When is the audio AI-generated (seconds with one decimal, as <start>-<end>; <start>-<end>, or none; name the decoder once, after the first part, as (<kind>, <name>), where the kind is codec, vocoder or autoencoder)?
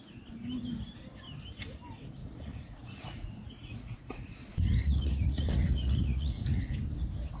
2.2-6.6 (vocoder, Vocos)